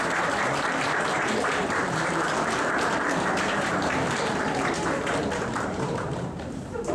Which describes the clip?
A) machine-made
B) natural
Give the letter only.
A